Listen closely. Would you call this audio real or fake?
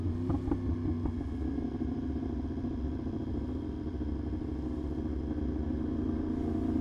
real